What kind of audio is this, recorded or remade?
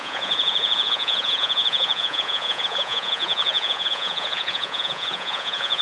remade